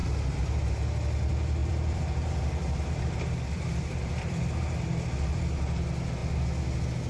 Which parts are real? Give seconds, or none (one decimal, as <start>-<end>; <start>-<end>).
0.0-1.6; 5.4-7.1